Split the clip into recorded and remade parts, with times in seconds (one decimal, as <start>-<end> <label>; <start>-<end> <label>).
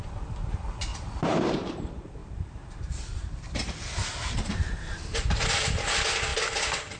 0.0-0.9 recorded; 0.9-1.8 remade; 1.8-2.2 recorded; 2.2-2.7 remade; 2.7-4.0 recorded; 4.0-5.4 remade; 5.4-7.0 recorded